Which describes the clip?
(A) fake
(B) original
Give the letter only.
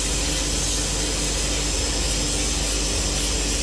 B